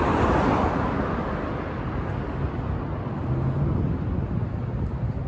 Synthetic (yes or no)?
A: no